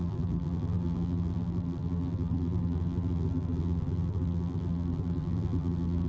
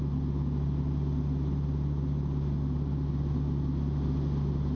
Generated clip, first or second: first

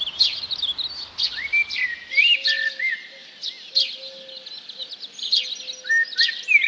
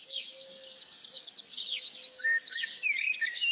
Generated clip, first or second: second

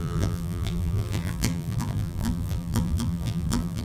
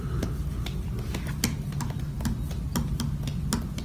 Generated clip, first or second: first